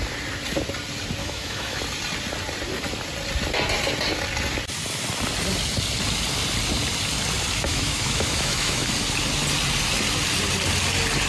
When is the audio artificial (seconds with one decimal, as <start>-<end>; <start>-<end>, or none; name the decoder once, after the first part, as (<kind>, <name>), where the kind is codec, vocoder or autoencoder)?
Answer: 1.2-1.8 (autoencoder, DAC-VAE); 7.7-8.9